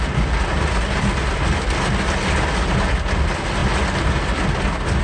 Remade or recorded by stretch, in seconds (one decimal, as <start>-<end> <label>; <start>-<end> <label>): 0.0-5.0 recorded